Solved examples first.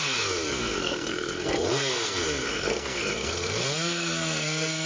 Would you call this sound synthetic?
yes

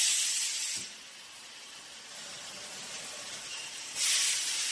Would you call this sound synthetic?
no